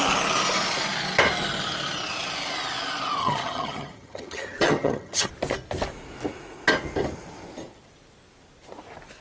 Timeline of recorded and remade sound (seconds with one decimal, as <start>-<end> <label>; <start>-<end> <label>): 0.0-3.2 recorded; 3.2-5.3 remade; 5.3-9.2 recorded